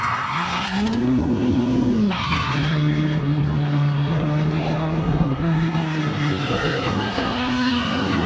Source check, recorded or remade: remade